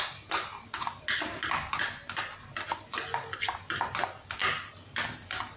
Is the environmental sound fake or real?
real